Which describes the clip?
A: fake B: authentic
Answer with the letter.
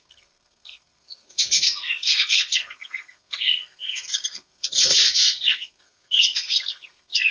A